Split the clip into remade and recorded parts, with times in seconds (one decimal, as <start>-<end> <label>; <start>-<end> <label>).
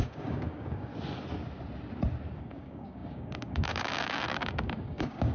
0.0-0.9 remade; 0.9-2.4 recorded; 2.4-5.3 remade